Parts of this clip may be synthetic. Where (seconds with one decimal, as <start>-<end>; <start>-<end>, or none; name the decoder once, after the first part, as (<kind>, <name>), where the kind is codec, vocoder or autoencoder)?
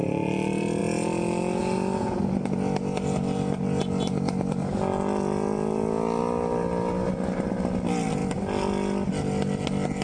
none